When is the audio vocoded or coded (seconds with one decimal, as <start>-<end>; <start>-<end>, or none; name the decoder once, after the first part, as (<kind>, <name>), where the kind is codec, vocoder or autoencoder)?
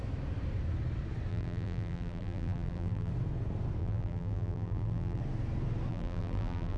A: 1.3-3.1 (vocoder, BigVGAN v2); 3.8-5.2; 5.9-6.8